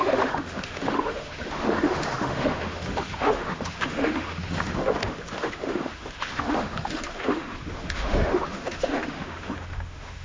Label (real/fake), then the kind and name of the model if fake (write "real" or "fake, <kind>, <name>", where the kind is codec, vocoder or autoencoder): fake, autoencoder, DAC-VAE